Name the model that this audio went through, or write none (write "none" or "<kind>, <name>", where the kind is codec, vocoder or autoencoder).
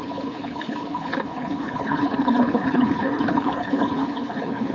codec, HILCodec